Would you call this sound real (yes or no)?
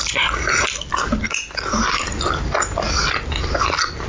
yes